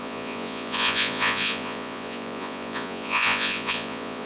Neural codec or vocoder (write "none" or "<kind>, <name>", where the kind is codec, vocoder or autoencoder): vocoder, Vocos